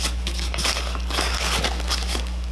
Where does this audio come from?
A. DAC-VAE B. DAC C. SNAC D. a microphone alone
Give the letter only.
B